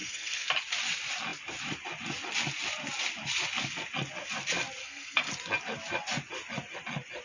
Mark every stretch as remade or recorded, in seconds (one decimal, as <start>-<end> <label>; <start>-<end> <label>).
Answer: 0.0-0.5 remade; 0.5-4.8 recorded; 4.8-5.3 remade; 5.3-7.2 recorded